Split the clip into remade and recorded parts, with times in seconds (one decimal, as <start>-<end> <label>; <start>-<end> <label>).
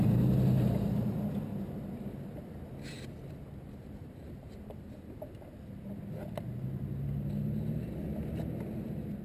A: 0.0-1.5 recorded; 1.5-5.1 remade; 5.1-9.2 recorded